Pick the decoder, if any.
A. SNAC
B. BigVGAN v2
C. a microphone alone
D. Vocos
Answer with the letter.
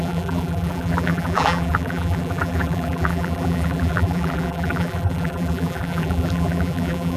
B